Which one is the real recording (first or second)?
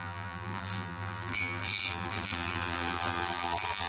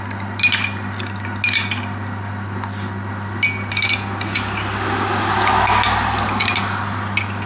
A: second